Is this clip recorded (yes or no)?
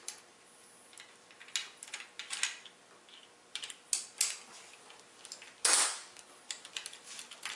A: yes